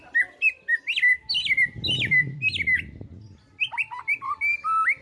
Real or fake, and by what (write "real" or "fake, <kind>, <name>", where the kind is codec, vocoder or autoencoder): real